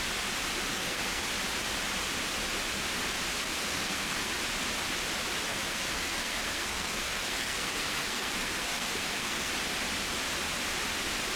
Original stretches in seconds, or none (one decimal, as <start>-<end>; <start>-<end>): 0.0-0.7; 1.3-3.3; 4.3-5.5; 9.5-11.4